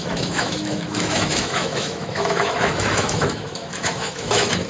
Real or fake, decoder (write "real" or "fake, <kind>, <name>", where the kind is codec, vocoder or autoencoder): fake, autoencoder, DAC-VAE